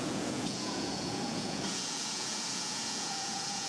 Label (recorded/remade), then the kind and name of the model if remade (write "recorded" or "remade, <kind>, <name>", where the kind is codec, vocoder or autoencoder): remade, vocoder, Vocos